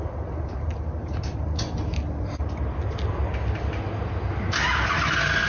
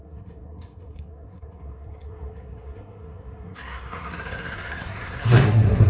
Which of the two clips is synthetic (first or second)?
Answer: second